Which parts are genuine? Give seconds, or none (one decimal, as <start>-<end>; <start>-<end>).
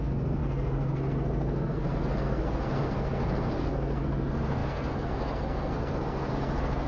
none